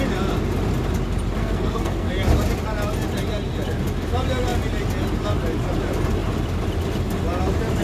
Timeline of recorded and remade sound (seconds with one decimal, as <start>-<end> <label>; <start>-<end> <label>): 0.0-1.4 recorded; 1.4-2.1 remade; 2.1-7.8 recorded